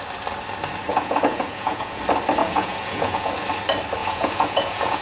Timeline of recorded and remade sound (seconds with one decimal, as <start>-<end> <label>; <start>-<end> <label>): 0.0-0.9 recorded; 0.9-2.0 remade; 2.0-2.4 recorded; 2.4-3.3 remade; 3.3-4.0 recorded; 4.0-5.0 remade